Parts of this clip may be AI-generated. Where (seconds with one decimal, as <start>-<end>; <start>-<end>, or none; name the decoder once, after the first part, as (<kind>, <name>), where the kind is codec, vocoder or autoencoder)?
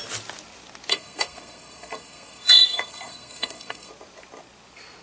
0.9-3.9 (codec, SNAC)